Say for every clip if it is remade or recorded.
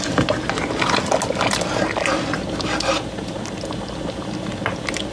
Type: recorded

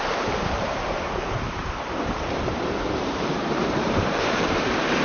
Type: remade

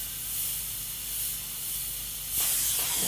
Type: recorded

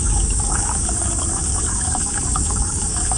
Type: remade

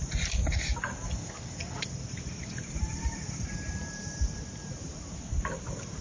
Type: recorded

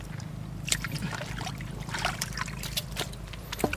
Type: recorded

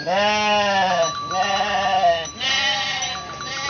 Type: recorded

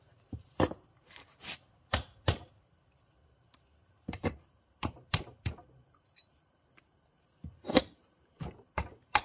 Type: remade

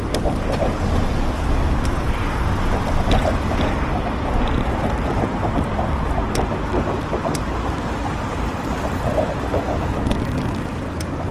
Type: recorded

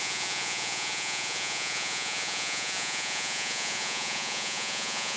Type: remade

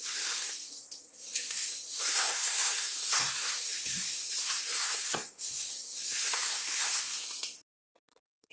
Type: remade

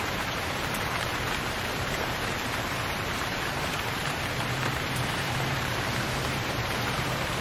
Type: remade